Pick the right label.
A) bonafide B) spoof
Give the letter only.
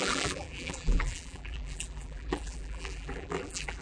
B